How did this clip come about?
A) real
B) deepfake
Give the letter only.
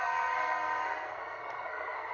B